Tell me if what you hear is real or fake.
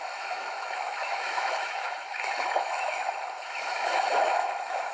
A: fake